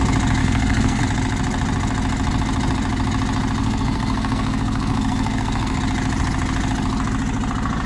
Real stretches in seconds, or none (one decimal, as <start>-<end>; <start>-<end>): 0.0-0.4; 1.0-3.6; 5.8-7.9